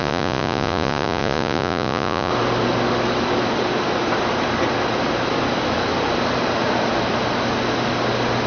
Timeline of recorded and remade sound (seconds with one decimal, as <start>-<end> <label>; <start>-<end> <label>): 0.0-2.3 remade; 2.3-8.5 recorded